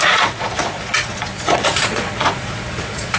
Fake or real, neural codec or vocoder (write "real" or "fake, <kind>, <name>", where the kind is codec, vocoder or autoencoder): fake, vocoder, Vocos